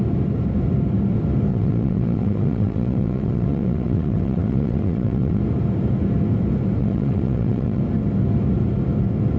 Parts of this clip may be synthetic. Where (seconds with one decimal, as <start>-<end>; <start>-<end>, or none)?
1.5-5.4; 6.8-7.8